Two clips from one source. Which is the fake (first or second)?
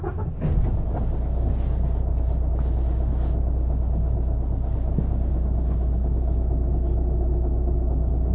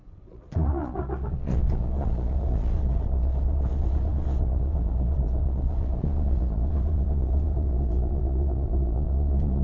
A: second